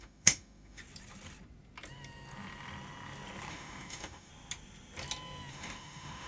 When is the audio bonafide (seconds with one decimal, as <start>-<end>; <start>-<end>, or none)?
0.8-3.5; 4.3-5.5